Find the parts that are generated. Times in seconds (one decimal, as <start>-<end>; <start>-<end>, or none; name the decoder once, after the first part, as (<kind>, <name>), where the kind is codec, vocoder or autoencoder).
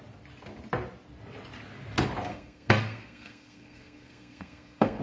2.3-5.0 (codec, SNAC)